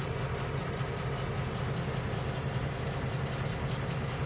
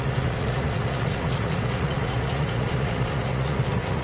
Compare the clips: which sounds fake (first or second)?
second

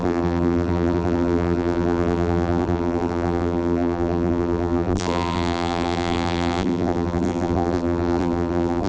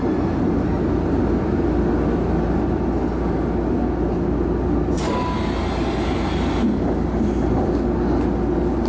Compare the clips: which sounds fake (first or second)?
first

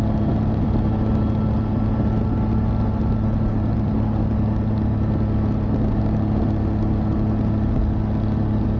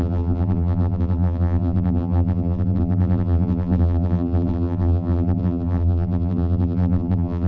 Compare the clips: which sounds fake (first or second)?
second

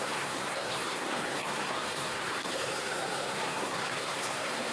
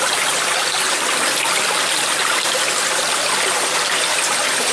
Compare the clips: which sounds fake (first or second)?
first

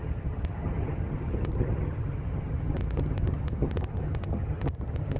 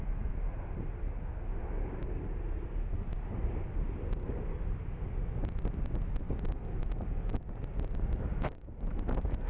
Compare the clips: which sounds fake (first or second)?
first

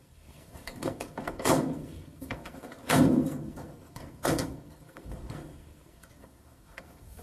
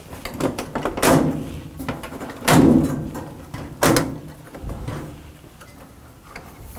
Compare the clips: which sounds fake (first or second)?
first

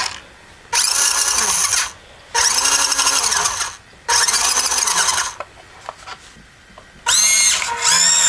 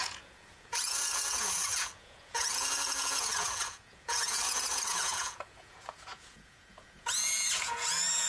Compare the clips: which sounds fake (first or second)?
second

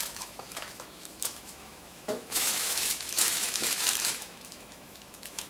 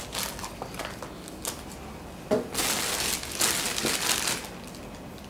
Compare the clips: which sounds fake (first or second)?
first